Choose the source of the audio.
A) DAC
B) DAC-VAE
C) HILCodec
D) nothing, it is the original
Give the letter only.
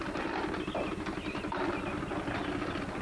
D